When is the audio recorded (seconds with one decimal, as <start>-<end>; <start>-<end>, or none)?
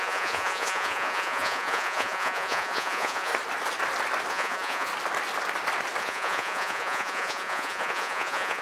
3.3-4.3; 4.9-6.0